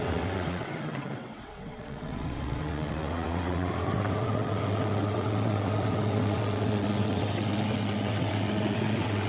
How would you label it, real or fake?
fake